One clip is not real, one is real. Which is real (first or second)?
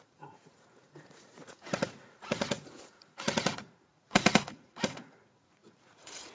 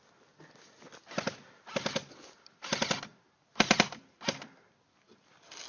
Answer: second